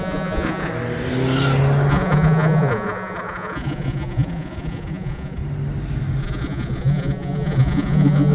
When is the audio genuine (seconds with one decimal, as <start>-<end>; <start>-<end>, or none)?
0.7-1.9; 5.4-6.2